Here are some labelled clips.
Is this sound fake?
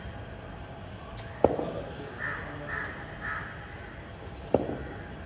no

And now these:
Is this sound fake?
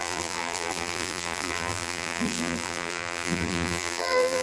yes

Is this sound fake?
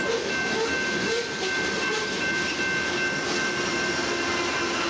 no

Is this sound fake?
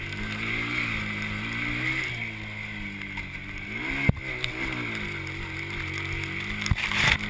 no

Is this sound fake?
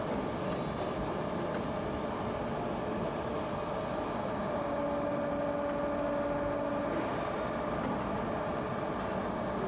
no